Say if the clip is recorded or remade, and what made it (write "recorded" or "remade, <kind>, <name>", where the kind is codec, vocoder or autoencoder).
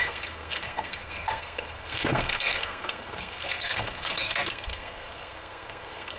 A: remade, codec, SNAC